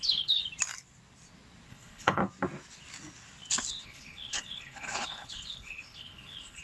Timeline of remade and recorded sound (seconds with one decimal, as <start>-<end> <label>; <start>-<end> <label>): 0.0-0.4 remade; 0.4-1.7 recorded; 1.7-2.2 remade; 2.2-3.8 recorded; 3.8-6.6 remade